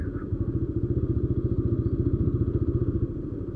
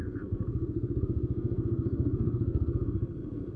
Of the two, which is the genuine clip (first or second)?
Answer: first